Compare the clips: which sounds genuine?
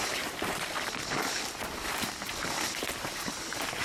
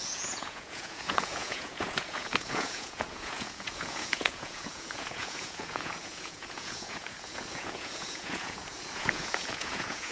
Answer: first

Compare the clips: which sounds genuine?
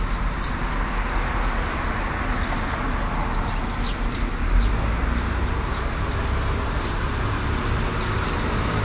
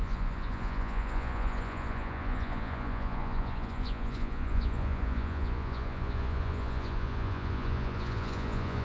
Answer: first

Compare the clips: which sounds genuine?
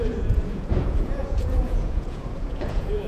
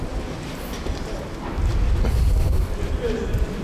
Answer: second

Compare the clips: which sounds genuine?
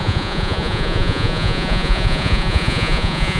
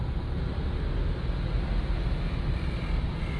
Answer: second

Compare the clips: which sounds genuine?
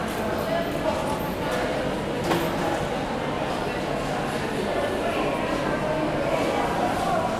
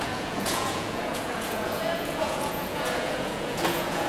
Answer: first